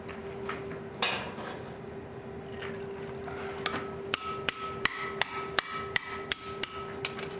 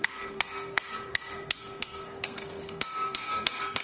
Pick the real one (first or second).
first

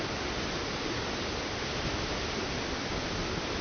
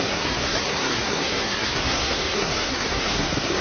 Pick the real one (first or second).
first